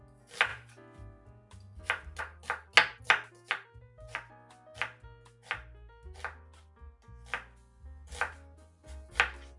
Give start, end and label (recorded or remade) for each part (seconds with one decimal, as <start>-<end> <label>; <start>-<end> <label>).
0.0-9.6 recorded